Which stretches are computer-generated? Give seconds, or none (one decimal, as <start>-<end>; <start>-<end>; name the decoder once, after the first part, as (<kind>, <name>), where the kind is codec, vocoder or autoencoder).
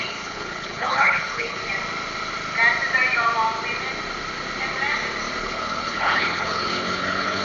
0.0-1.6 (codec, HILCodec); 5.4-7.4